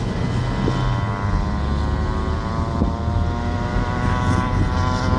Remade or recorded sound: recorded